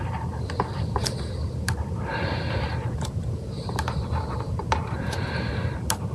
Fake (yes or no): yes